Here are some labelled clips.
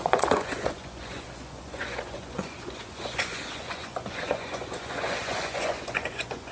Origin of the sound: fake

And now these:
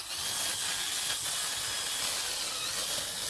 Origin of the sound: real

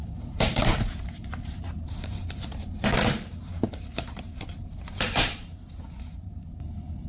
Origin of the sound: fake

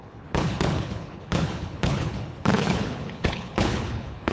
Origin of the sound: fake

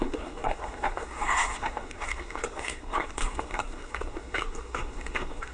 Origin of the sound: fake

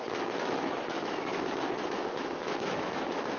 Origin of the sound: fake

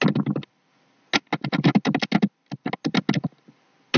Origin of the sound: real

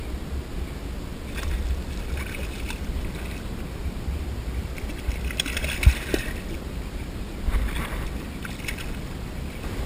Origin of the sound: real